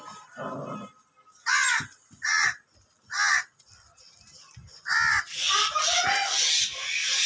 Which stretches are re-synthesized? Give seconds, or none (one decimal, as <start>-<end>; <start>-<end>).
none